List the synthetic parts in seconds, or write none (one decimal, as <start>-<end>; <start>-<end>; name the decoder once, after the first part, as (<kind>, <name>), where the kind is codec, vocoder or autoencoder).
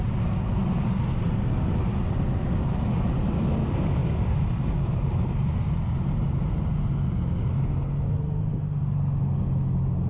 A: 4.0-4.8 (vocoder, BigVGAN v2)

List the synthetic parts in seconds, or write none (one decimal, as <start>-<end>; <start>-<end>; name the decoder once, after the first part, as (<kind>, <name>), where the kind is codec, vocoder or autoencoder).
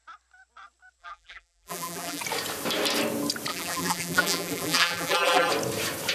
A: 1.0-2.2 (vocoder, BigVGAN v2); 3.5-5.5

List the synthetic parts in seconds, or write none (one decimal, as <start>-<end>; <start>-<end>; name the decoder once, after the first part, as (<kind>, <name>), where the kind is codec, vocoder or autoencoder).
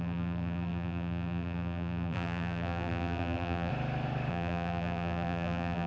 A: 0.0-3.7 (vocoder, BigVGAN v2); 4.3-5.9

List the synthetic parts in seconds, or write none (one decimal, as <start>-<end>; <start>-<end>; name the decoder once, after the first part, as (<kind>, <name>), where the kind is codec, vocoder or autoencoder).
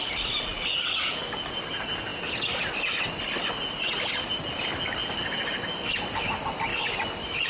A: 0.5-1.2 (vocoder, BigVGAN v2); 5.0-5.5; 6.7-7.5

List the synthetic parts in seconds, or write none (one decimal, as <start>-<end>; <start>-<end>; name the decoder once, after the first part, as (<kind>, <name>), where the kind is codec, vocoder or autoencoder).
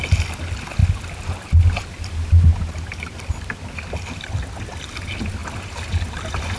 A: none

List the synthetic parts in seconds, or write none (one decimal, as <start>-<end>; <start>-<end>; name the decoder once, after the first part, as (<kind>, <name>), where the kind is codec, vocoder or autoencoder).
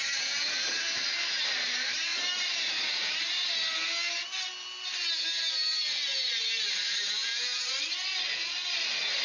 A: 0.0-3.7 (vocoder, BigVGAN v2); 7.4-9.2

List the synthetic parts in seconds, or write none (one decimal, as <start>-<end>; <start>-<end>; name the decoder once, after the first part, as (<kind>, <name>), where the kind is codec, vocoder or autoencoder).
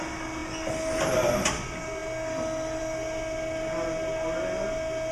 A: none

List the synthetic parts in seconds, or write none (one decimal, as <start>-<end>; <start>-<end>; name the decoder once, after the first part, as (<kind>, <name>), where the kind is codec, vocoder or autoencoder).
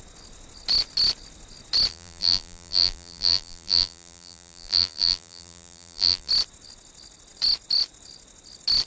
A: 1.9-6.3 (vocoder, BigVGAN v2)